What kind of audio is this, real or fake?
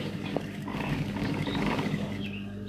fake